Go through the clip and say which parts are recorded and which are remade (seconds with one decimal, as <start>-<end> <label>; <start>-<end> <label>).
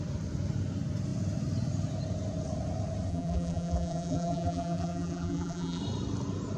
0.0-3.1 recorded; 3.1-5.8 remade; 5.8-6.6 recorded